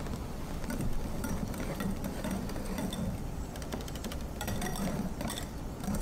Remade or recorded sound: remade